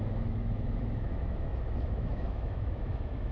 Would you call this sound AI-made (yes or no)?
yes